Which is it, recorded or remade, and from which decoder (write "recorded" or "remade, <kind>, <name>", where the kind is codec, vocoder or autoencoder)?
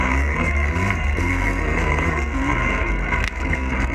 remade, codec, SNAC